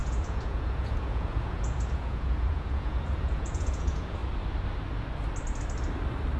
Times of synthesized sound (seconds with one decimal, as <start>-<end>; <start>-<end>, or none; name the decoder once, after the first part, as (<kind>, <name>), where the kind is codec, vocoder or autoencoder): 0.0-4.2 (vocoder, Vocos)